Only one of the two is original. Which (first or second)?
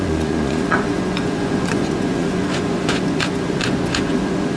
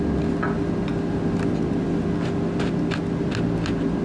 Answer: second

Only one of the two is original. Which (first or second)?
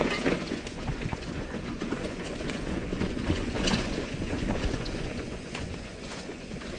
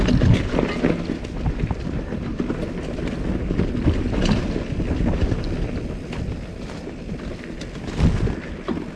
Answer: second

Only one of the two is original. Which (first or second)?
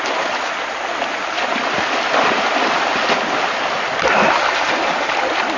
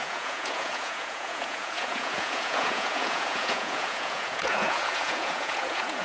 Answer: first